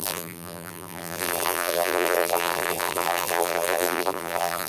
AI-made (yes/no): yes